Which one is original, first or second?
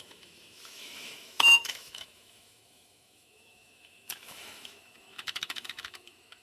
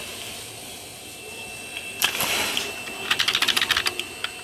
second